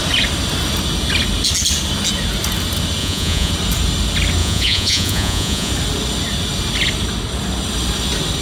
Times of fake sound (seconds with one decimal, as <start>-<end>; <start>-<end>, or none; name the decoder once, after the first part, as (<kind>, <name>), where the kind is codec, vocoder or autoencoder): 3.0-3.5 (vocoder, Vocos); 4.4-5.7